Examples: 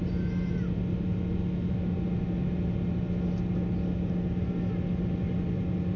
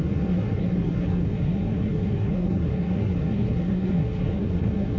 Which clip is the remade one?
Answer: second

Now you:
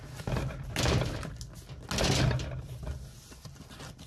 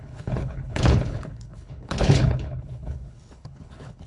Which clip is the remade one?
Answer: second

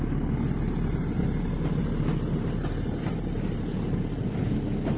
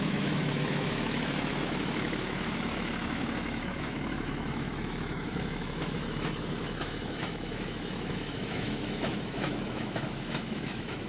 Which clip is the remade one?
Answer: second